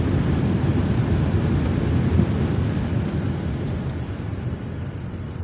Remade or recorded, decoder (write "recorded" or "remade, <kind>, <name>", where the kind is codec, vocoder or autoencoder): recorded